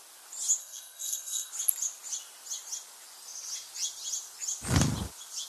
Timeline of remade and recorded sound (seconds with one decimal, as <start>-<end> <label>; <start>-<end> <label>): 0.0-0.6 recorded; 0.6-1.5 remade; 1.5-5.5 recorded